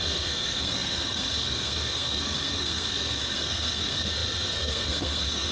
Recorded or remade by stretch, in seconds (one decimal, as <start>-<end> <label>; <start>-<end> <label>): 0.0-5.5 remade